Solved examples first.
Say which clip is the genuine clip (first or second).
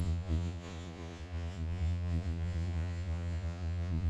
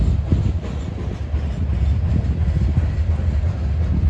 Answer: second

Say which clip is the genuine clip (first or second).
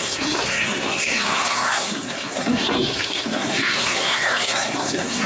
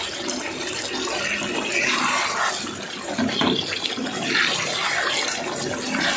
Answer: second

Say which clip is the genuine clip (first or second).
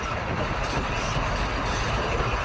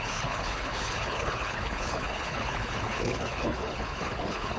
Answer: first